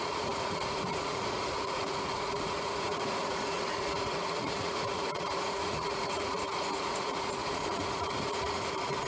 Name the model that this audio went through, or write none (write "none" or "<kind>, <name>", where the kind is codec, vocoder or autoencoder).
vocoder, Vocos